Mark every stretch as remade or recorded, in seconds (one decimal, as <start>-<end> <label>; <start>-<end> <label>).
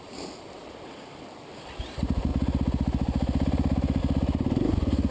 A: 0.0-5.1 recorded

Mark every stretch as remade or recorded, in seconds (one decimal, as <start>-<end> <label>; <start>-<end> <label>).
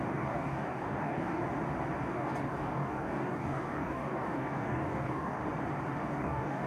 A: 0.0-1.4 remade; 1.4-2.1 recorded; 2.1-5.4 remade; 5.4-6.0 recorded; 6.0-6.7 remade